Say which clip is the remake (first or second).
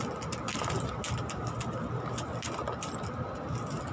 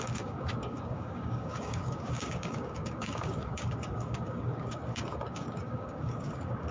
second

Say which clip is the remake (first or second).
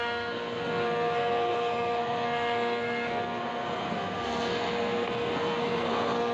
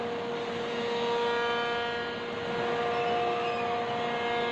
first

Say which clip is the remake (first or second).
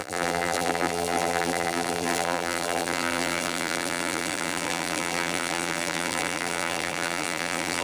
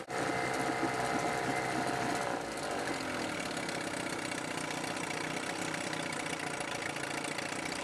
first